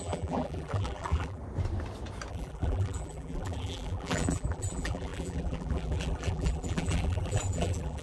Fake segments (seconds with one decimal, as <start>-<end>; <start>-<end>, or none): 0.0-1.4; 2.3-8.0